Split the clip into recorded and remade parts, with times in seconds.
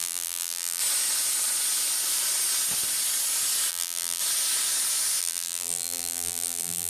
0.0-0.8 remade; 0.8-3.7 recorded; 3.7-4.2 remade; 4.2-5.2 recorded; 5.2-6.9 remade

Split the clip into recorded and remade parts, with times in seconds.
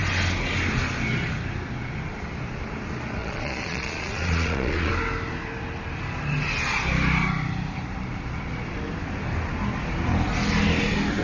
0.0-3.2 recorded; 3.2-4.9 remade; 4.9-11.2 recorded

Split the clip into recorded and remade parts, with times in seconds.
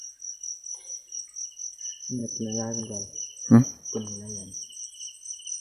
0.0-2.2 recorded; 2.2-2.8 remade; 2.8-5.6 recorded